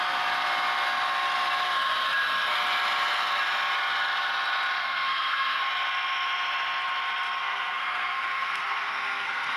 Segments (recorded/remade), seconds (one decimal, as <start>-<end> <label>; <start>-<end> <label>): 0.0-4.8 recorded; 4.8-5.6 remade; 5.6-7.4 recorded; 7.4-9.6 remade